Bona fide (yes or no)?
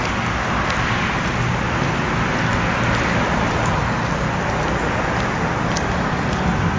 yes